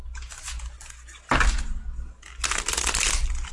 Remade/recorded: recorded